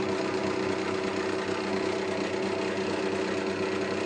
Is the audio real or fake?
real